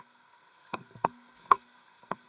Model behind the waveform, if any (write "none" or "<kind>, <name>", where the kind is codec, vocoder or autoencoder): codec, SNAC